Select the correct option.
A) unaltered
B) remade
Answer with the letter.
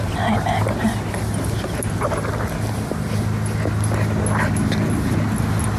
A